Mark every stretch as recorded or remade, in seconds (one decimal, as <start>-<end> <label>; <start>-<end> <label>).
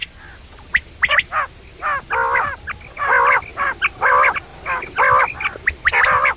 0.0-6.4 recorded